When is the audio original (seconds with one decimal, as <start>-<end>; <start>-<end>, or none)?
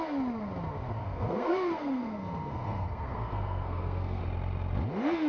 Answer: 0.0-1.0; 4.2-5.3